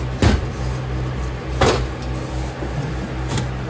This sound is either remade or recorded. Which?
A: recorded